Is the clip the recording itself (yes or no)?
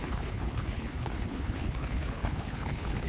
no